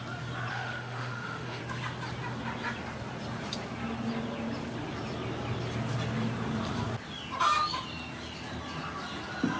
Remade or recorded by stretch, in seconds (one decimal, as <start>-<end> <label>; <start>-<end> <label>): 0.0-0.5 recorded; 0.5-1.6 remade; 1.6-9.6 recorded